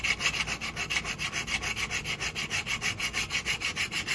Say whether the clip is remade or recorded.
recorded